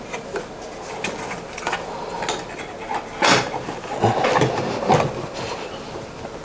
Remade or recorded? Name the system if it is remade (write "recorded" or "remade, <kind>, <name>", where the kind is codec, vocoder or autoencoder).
recorded